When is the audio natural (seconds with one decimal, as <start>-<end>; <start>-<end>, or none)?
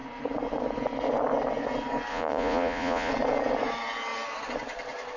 0.0-2.1; 3.1-5.2